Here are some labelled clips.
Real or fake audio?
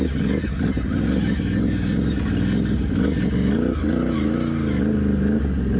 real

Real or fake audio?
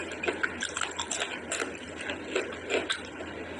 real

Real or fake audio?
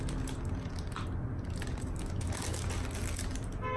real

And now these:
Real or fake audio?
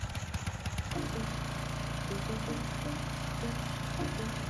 fake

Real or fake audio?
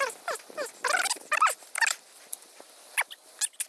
real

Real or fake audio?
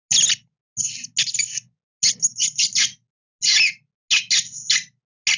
real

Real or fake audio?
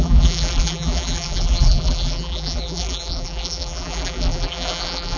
fake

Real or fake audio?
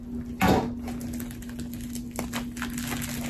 real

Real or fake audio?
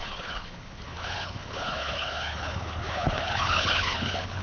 fake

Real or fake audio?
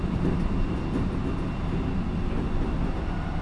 real